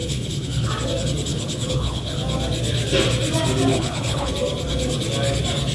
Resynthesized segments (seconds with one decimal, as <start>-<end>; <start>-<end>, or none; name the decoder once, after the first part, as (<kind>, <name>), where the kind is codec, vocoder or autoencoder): 0.0-0.7 (codec, HILCodec); 1.3-2.2; 3.7-4.3